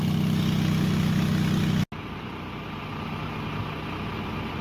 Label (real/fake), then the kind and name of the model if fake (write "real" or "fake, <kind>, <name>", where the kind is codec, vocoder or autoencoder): real